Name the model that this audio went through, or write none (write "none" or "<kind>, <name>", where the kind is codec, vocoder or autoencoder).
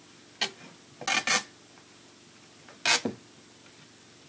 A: none